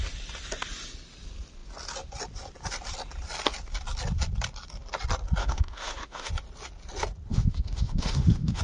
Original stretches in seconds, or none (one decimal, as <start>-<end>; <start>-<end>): 0.0-5.4; 6.3-7.3